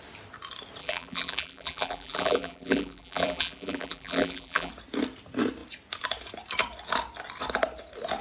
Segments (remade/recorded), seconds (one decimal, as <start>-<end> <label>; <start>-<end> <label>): 0.0-0.8 recorded; 0.8-4.7 remade; 4.7-8.2 recorded